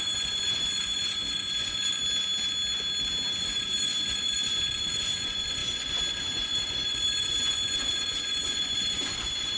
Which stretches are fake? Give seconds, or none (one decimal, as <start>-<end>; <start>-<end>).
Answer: 0.0-2.0; 3.4-9.6